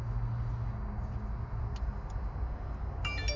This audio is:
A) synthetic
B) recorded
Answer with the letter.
B